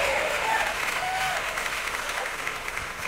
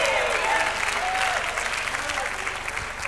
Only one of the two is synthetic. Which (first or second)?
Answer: first